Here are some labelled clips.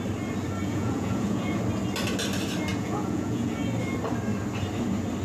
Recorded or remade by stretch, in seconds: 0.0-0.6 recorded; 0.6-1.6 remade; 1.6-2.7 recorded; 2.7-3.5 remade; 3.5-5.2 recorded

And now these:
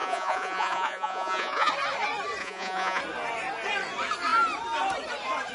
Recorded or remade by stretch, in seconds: 0.0-1.7 remade; 1.7-2.4 recorded; 2.4-3.0 remade; 3.0-5.5 recorded

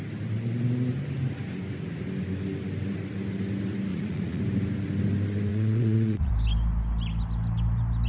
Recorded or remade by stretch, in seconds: 0.0-3.9 recorded; 3.9-4.4 remade; 4.4-5.5 recorded; 5.5-6.3 remade; 6.3-8.1 recorded